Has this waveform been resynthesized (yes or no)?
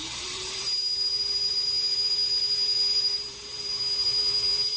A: yes